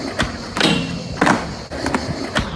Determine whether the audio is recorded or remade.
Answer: recorded